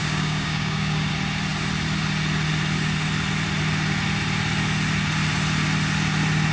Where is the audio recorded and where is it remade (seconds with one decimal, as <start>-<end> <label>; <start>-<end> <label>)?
0.0-1.1 remade; 1.1-6.5 recorded